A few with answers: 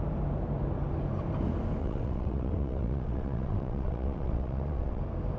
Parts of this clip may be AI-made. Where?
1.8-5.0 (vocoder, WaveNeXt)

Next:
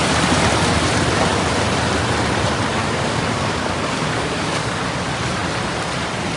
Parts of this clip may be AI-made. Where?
2.8-4.8 (codec, DAC)

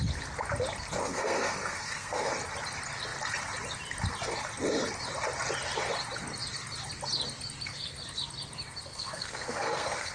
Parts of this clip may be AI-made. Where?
1.0-2.3 (codec, SNAC); 8.9-10.1

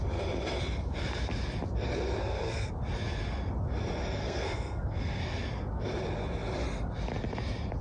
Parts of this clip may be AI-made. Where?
2.2-2.7 (codec, SNAC); 4.2-5.2

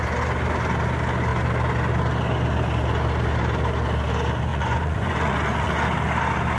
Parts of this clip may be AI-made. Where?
4.5-5.8 (vocoder, Vocos)

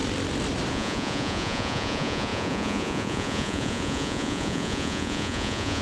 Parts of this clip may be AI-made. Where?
0.7-5.8 (vocoder, Vocos)

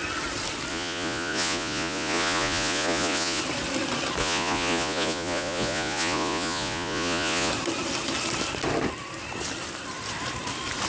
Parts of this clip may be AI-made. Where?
0.7-3.4 (vocoder, Vocos); 4.2-7.5